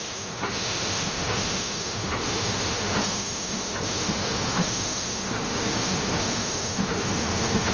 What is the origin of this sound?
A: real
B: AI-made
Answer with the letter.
B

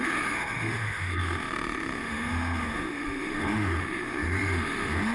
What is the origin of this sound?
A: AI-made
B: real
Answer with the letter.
A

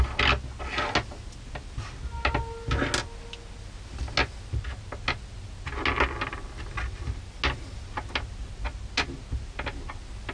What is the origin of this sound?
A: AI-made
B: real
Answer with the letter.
B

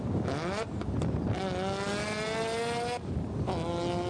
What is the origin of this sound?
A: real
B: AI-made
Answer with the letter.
A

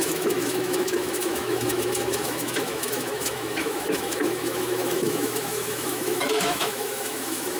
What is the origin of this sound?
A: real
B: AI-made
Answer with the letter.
B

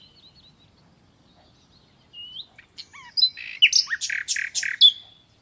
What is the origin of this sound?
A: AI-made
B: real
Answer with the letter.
B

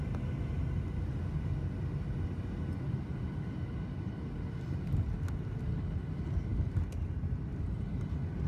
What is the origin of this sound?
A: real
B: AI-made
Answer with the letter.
A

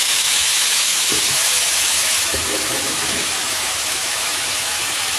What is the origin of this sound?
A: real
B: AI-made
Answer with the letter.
B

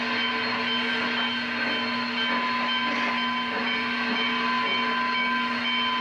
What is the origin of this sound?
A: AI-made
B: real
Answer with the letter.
B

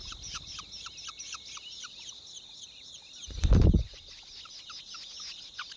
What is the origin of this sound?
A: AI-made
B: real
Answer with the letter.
B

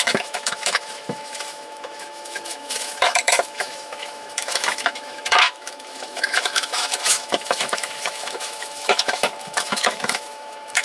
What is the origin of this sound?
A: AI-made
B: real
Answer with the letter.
A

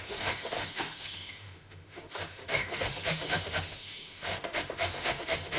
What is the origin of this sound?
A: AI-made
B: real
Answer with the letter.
A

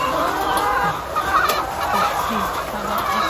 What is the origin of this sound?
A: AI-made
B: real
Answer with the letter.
B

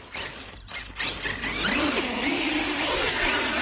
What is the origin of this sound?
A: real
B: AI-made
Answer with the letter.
A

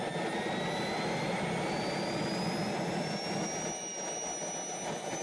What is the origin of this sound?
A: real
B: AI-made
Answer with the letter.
A